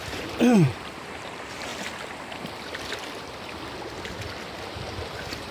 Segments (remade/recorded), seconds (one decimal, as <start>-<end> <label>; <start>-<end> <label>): 0.0-1.7 remade; 1.7-5.0 recorded; 5.0-5.5 remade